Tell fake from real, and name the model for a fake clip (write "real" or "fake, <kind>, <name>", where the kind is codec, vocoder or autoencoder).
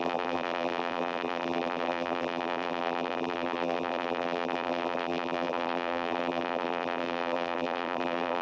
fake, vocoder, BigVGAN v2